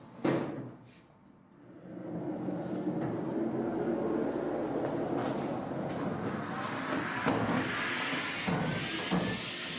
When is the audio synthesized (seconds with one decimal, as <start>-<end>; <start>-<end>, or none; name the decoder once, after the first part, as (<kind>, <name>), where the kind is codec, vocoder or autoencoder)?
none